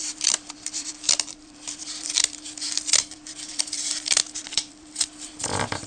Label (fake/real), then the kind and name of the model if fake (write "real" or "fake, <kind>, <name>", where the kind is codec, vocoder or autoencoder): fake, vocoder, BigVGAN v2